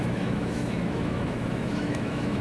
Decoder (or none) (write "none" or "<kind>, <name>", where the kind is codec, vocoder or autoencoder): autoencoder, DAC-VAE